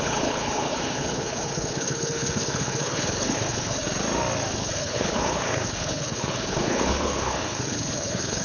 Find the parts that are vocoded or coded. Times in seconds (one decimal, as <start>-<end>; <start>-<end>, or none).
0.0-3.8; 4.5-8.4